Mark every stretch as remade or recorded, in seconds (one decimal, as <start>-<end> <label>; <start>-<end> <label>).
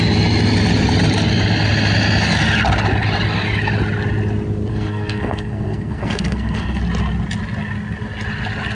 0.0-4.7 recorded; 4.7-6.8 remade; 6.8-8.7 recorded